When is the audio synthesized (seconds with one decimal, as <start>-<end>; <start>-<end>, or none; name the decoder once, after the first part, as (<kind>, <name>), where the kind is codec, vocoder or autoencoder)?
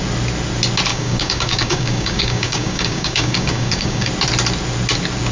0.9-4.1 (codec, DAC)